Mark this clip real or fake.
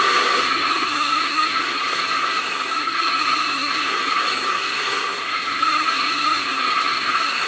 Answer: fake